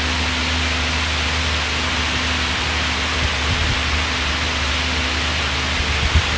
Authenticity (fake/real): real